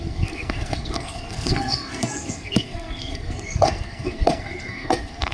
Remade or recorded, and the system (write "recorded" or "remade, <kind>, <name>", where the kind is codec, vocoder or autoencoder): remade, codec, SNAC